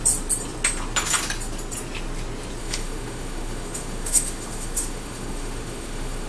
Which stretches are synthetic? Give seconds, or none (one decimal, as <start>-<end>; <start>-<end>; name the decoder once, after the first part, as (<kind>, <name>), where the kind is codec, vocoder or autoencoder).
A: 2.6-6.3 (autoencoder, DAC-VAE)